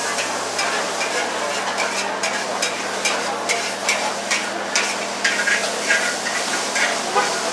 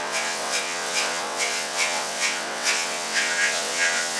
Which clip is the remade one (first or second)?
second